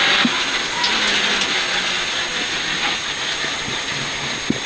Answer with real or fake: real